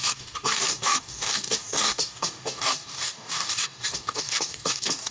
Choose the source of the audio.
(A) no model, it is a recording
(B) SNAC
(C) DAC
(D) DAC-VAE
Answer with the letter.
C